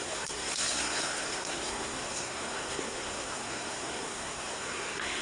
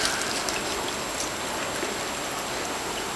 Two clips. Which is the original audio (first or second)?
second